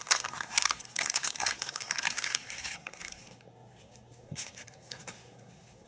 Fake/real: fake